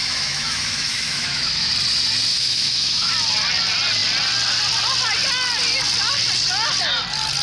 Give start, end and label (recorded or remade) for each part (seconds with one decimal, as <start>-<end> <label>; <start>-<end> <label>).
0.0-1.7 remade; 1.7-2.3 recorded; 2.3-3.1 remade; 3.1-7.4 recorded